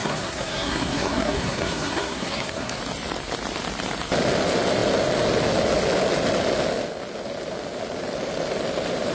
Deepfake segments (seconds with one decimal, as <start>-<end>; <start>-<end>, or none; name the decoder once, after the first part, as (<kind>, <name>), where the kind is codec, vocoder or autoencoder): 0.0-2.8 (codec, SNAC)